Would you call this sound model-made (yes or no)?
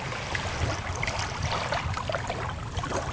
no